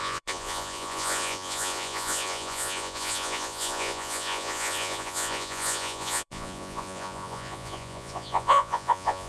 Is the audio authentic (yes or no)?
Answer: no